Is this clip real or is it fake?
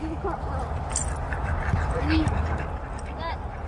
real